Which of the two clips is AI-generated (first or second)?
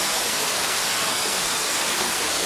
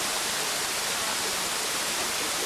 first